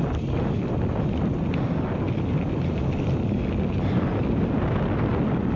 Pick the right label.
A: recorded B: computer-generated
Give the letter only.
A